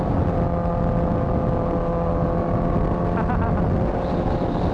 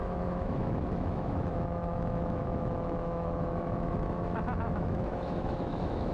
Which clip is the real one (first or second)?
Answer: first